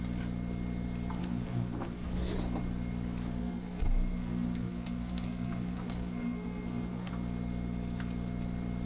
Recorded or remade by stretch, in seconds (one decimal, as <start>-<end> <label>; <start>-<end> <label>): 0.0-1.2 recorded; 1.2-2.3 remade; 2.3-3.4 recorded; 3.4-7.1 remade; 7.1-8.9 recorded